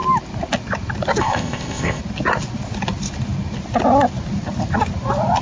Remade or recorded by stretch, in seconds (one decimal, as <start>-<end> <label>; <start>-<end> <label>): 0.0-1.2 recorded; 1.2-2.0 remade; 2.0-5.4 recorded